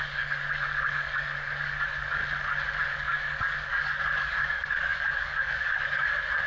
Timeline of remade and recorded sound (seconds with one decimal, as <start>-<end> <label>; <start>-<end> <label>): 0.0-2.2 remade; 2.2-2.8 recorded; 2.8-6.5 remade